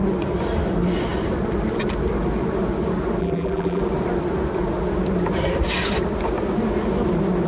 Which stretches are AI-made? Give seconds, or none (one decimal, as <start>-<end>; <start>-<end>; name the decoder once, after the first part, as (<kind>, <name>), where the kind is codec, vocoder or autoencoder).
3.2-3.8 (vocoder, BigVGAN v2)

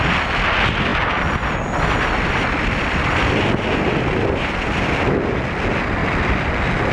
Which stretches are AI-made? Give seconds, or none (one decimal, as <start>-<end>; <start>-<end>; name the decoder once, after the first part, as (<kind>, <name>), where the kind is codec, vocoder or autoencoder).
0.9-5.0 (vocoder, BigVGAN v2); 6.0-6.5